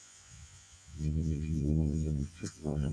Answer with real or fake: fake